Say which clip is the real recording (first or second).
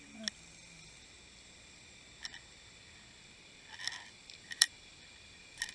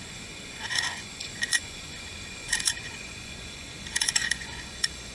first